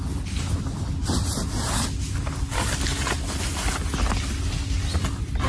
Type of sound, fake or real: real